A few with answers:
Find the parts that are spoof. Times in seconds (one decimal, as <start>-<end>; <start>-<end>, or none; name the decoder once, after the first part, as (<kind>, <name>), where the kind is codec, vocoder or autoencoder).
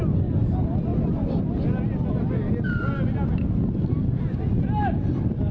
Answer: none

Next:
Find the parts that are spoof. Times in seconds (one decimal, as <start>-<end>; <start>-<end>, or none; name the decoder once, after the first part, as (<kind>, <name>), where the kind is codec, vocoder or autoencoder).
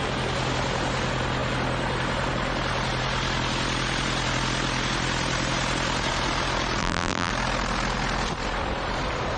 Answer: 6.8-7.3 (vocoder, BigVGAN v2)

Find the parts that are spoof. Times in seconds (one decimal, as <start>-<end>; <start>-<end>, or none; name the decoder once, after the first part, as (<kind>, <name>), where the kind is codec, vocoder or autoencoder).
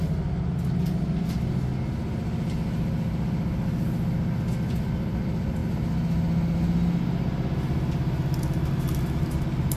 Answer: none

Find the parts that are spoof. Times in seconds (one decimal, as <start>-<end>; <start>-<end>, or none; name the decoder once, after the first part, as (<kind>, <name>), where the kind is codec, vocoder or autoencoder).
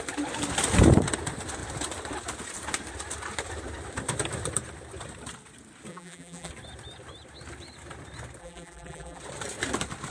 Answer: 5.9-6.5 (vocoder, BigVGAN v2); 8.4-9.2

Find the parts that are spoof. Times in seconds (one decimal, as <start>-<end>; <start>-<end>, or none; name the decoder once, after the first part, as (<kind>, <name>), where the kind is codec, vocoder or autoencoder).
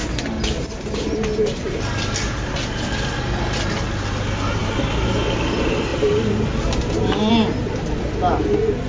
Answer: none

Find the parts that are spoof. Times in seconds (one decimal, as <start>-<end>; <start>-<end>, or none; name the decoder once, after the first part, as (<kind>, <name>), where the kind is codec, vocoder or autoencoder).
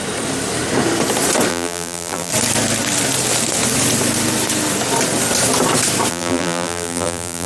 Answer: 1.5-2.3 (vocoder, BigVGAN v2); 6.1-7.5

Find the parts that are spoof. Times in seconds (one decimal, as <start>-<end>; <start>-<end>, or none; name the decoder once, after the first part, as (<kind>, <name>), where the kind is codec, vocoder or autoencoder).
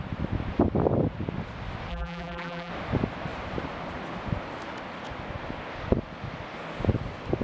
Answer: 1.9-2.7 (vocoder, BigVGAN v2)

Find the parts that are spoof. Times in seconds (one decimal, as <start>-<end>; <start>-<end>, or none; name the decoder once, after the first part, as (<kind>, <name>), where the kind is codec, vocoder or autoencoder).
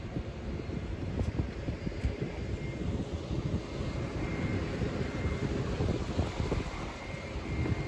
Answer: 4.5-7.5 (vocoder, BigVGAN v2)